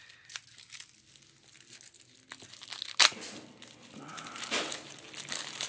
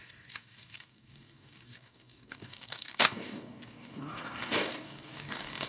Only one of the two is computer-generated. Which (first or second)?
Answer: second